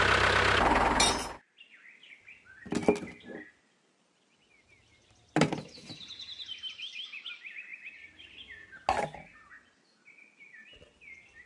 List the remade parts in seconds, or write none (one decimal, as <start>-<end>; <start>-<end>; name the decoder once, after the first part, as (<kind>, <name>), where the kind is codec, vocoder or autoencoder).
none